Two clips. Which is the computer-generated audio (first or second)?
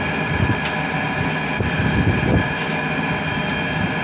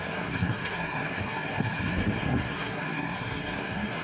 second